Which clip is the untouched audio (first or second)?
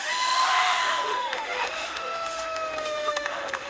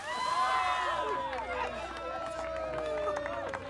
second